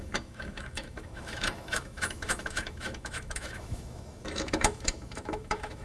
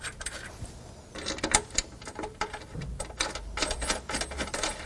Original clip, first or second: second